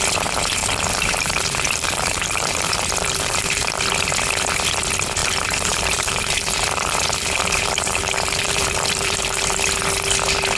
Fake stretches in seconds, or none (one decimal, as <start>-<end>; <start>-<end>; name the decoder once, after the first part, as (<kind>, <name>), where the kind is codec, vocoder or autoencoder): 0.6-3.8 (vocoder, BigVGAN v2); 5.2-9.4